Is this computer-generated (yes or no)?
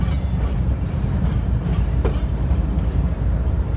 yes